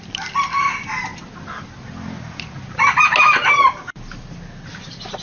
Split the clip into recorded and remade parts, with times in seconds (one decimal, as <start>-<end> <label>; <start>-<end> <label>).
0.0-5.2 recorded